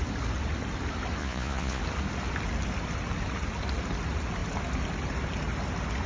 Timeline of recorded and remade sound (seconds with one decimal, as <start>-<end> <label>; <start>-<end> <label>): 0.0-1.2 recorded; 1.2-1.8 remade; 1.8-6.1 recorded